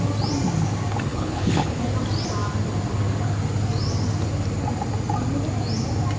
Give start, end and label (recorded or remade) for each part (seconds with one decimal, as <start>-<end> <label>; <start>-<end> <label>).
0.0-1.1 recorded; 1.1-1.8 remade; 1.8-6.2 recorded